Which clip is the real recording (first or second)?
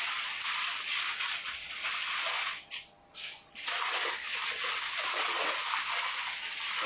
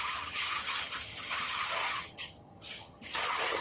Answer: first